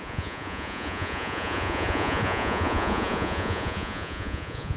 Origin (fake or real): fake